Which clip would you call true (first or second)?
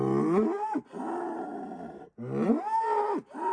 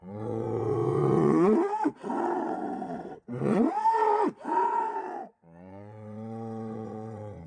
first